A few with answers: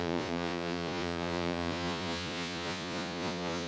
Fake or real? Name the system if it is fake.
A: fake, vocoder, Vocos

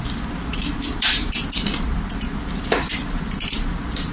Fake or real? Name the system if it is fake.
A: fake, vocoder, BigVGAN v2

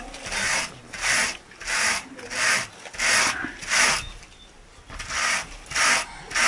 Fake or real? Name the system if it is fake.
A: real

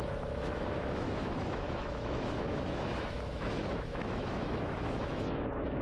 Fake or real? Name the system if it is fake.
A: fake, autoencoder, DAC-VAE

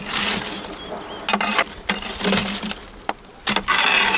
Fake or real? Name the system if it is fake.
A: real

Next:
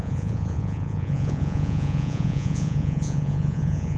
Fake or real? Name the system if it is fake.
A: fake, vocoder, Vocos